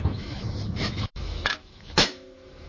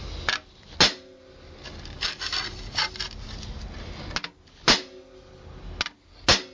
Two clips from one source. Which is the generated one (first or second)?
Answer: first